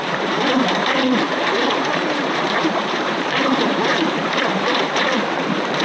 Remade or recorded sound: remade